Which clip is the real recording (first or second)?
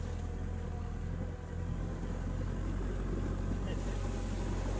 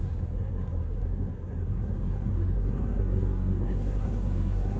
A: first